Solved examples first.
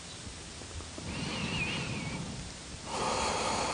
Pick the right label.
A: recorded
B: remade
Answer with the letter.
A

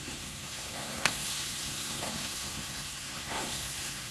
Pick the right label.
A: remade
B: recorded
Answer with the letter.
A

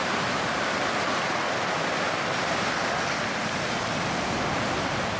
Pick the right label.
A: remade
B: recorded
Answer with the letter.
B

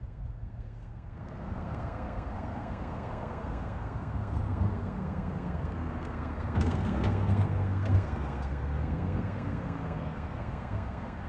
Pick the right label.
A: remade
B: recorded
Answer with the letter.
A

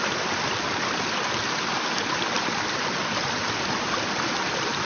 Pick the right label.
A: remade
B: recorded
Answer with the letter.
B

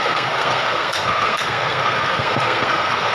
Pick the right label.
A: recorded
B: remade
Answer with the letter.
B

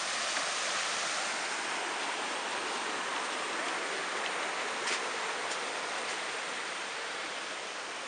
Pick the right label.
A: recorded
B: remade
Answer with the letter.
A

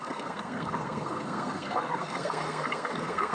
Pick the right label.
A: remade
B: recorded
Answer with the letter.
A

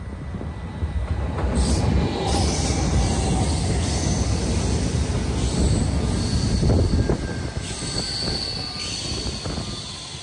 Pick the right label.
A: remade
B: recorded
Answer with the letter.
B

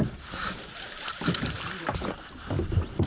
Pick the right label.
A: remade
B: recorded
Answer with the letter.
B